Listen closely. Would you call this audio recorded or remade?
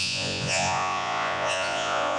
remade